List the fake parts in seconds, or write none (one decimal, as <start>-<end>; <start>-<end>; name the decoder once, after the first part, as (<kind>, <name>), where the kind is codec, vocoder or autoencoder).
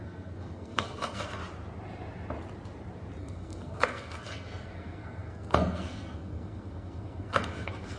0.0-1.4 (codec, SNAC); 3.2-8.0